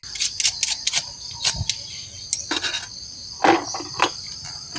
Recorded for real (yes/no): yes